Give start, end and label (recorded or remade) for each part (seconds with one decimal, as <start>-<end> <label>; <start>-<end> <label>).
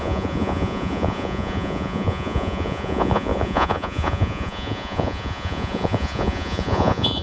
0.0-7.2 remade